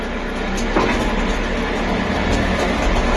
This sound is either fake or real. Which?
real